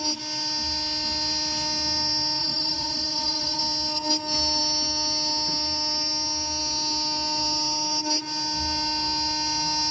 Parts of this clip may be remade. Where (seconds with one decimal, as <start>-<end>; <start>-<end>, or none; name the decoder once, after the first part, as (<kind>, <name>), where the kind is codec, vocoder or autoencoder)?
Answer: 2.4-3.6 (vocoder, Vocos)